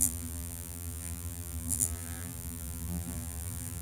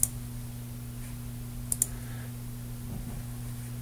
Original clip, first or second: second